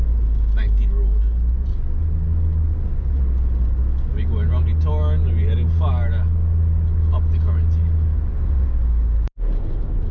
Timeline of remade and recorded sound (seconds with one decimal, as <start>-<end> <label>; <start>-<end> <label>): 0.0-10.1 recorded